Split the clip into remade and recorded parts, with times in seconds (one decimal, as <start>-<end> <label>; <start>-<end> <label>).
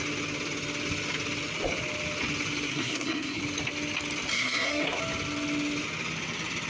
0.0-2.7 recorded; 2.7-3.4 remade; 3.4-4.3 recorded; 4.3-5.0 remade; 5.0-6.7 recorded